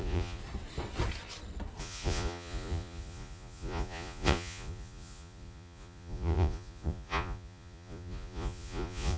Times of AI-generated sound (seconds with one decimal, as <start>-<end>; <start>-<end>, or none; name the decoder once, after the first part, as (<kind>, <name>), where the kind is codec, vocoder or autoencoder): 0.0-0.4 (vocoder, Vocos); 1.8-9.2